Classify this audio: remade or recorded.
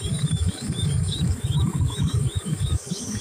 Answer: remade